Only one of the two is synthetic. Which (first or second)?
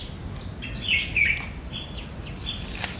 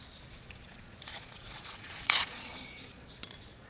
second